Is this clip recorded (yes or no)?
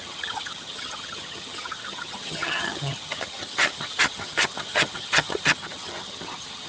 no